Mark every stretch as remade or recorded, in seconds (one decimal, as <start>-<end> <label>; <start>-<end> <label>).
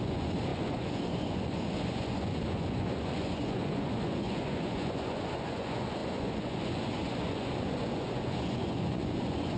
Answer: 0.0-9.6 remade